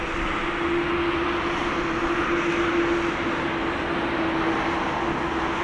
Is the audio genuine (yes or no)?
yes